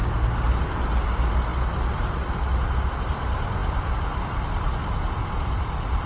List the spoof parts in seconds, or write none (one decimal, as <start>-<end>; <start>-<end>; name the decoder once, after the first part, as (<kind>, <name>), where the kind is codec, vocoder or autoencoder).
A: none